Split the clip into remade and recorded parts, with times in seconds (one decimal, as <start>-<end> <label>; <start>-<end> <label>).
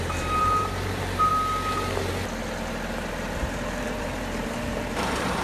0.0-1.3 remade; 1.3-3.3 recorded; 3.3-5.4 remade